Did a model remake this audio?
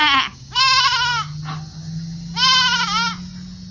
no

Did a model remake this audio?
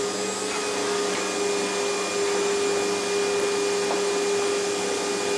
no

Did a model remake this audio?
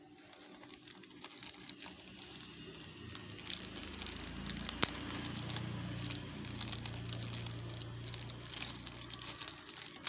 no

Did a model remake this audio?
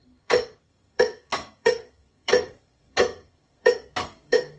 yes